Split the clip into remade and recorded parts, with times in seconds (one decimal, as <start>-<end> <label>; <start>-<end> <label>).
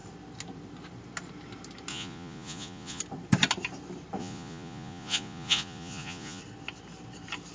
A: 0.0-1.9 recorded; 1.9-3.0 remade; 3.0-4.2 recorded; 4.2-6.4 remade; 6.4-7.5 recorded